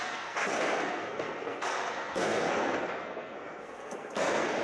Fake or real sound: fake